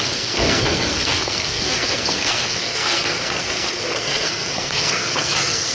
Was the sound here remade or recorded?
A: remade